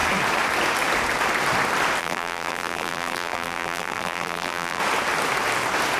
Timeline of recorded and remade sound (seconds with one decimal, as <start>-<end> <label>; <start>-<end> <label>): 0.0-2.0 recorded; 2.0-4.8 remade; 4.8-6.0 recorded